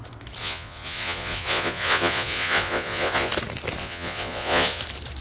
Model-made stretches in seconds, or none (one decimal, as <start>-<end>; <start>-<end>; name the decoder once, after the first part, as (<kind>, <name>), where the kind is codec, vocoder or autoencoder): 0.4-3.3 (vocoder, Vocos); 3.8-4.8